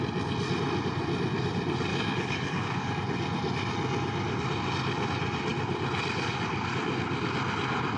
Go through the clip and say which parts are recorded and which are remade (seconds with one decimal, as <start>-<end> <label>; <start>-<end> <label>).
0.0-1.9 recorded; 1.9-2.9 remade; 2.9-8.0 recorded